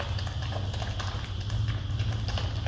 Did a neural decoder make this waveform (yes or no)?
no